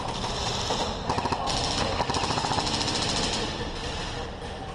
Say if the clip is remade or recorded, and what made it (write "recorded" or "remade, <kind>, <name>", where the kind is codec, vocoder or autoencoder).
recorded